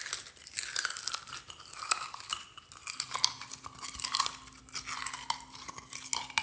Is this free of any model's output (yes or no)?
yes